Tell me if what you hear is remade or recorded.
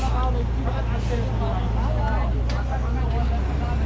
recorded